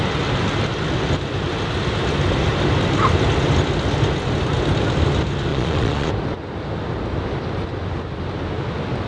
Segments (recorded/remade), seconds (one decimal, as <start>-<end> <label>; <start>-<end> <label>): 0.0-5.5 recorded; 5.5-6.1 remade; 6.1-9.1 recorded